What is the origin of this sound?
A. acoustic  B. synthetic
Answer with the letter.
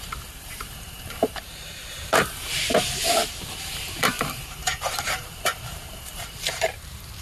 B